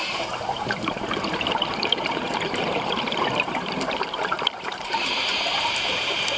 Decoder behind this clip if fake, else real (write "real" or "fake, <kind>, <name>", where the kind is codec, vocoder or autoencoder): fake, vocoder, BigVGAN v2